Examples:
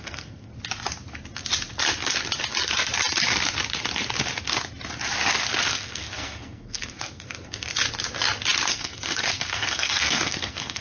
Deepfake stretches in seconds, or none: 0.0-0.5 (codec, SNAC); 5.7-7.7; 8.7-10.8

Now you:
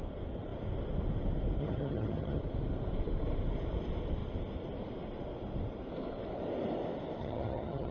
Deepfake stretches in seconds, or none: 1.6-2.4 (vocoder, HiFi-GAN); 7.2-7.9

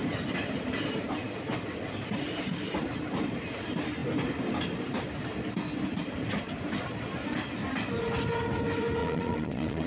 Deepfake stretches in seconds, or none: 9.0-9.9 (vocoder, Vocos)

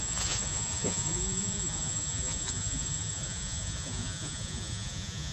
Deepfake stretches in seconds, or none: 0.0-5.3 (vocoder, Vocos)

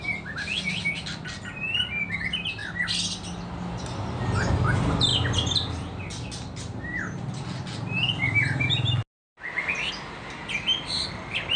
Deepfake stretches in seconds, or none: none